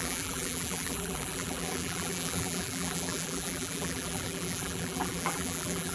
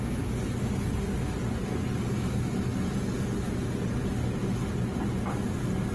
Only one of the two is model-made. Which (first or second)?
first